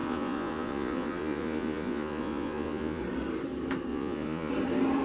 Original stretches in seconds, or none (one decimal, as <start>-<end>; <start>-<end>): 3.0-3.9; 4.5-5.0